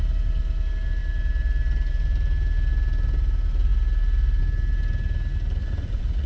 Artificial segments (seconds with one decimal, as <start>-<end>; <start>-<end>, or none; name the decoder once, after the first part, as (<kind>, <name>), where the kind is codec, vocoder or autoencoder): 5.6-6.3 (vocoder, Vocos)